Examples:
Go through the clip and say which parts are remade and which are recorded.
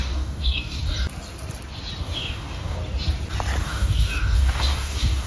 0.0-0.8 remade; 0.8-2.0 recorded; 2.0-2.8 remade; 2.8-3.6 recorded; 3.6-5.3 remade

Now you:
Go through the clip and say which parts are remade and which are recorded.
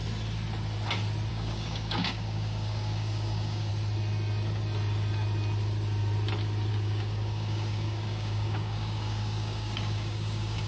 0.0-1.3 recorded; 1.3-3.7 remade; 3.7-6.7 recorded; 6.7-10.7 remade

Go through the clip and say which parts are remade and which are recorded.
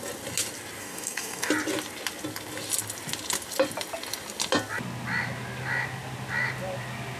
0.0-0.8 recorded; 0.8-1.5 remade; 1.5-7.2 recorded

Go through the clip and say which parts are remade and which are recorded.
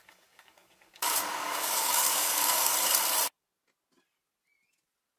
0.0-2.7 remade; 2.7-5.2 recorded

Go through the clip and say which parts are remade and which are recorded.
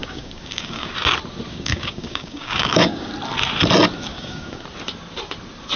0.0-0.9 remade; 0.9-1.5 recorded; 1.5-3.1 remade; 3.1-4.1 recorded; 4.1-4.6 remade; 4.6-5.8 recorded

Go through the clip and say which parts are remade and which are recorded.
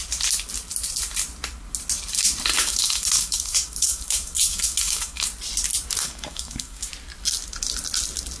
0.0-2.5 recorded; 2.5-5.3 remade; 5.3-6.0 recorded; 6.0-6.9 remade; 6.9-8.4 recorded